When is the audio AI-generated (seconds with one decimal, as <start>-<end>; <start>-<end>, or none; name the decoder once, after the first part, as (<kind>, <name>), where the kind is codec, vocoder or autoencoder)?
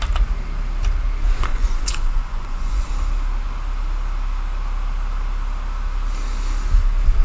1.5-2.9 (vocoder, Vocos)